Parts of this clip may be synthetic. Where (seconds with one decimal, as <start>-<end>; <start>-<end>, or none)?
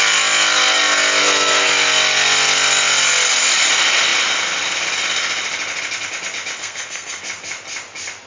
1.2-1.7; 6.6-7.2